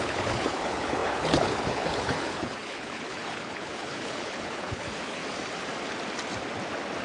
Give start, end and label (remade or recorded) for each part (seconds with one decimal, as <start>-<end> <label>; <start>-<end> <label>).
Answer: 0.0-5.2 remade; 5.2-7.0 recorded

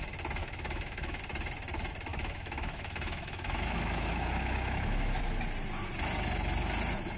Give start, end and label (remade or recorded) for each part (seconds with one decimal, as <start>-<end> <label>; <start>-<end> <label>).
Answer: 0.0-0.4 recorded; 0.4-1.2 remade; 1.2-2.1 recorded; 2.1-5.2 remade; 5.2-7.2 recorded